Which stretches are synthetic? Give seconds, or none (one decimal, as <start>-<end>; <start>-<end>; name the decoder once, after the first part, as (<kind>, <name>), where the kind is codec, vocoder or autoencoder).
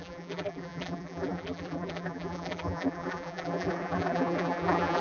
0.0-5.0 (vocoder, BigVGAN v2)